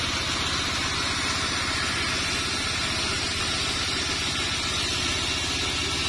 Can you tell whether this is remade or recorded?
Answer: recorded